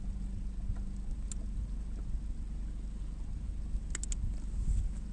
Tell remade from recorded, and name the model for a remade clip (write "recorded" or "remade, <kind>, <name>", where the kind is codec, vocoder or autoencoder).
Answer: recorded